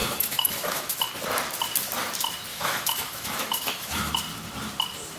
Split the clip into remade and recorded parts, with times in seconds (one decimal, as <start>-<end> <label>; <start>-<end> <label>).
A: 0.0-1.1 remade; 1.1-2.5 recorded; 2.5-4.1 remade; 4.1-5.2 recorded